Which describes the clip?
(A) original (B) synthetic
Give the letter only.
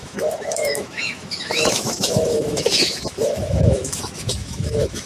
B